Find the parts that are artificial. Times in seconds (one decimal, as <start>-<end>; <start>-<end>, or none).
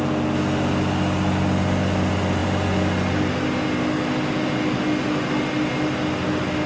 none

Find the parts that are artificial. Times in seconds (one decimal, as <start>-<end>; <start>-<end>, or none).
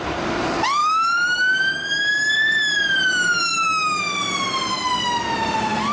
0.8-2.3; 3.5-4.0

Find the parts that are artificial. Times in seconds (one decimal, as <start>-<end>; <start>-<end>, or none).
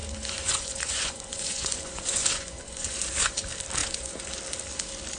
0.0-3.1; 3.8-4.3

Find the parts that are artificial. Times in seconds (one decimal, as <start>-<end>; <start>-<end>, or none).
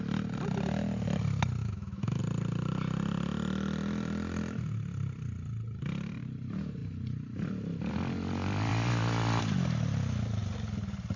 1.6-2.2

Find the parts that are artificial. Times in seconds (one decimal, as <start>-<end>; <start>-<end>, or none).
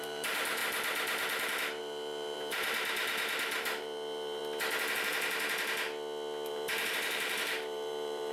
0.0-0.6; 1.8-4.4; 6.5-8.3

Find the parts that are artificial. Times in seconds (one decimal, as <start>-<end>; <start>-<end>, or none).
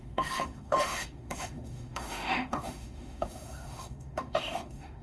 0.0-5.0